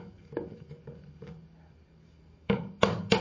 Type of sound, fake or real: fake